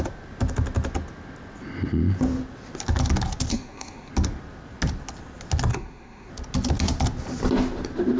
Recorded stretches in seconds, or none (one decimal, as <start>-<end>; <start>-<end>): 0.0-3.5; 4.1-5.7; 6.3-8.2

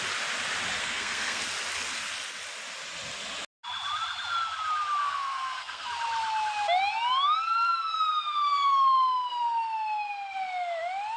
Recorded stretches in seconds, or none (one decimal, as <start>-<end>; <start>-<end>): 0.0-0.8; 1.4-5.0; 5.9-11.2

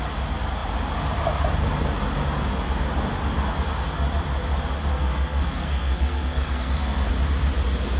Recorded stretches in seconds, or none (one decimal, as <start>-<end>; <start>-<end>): 0.0-4.9; 7.1-8.0

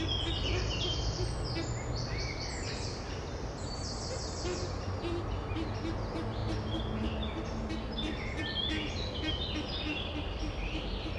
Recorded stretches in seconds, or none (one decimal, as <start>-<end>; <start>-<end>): 0.0-11.2

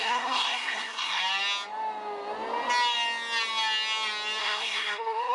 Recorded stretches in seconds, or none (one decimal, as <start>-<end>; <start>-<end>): 1.2-4.4

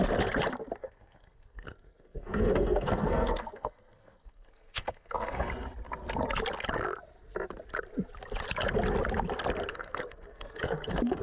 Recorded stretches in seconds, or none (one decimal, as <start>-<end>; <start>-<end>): 0.0-0.8; 5.5-9.7

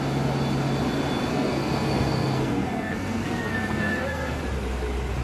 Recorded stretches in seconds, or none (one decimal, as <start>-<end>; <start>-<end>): 0.0-1.3; 4.4-5.2